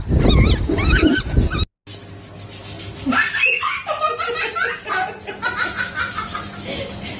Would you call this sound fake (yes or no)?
no